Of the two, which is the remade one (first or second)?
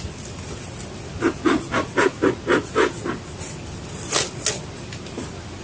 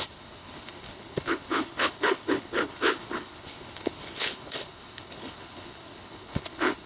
second